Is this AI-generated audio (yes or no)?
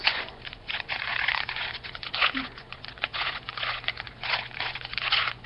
yes